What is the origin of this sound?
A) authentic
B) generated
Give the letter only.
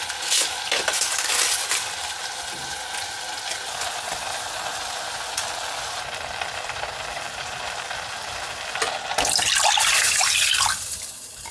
A